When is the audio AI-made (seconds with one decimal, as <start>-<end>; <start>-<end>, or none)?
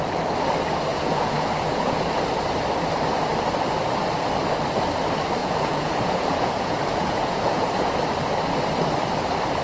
0.9-2.2; 5.4-7.9